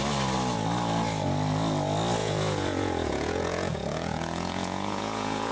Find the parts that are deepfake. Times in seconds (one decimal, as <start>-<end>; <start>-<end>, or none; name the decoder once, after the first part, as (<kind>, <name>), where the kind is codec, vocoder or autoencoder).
2.2-5.5 (vocoder, Vocos)